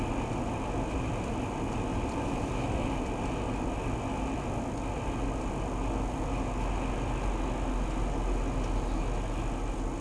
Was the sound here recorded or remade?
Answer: recorded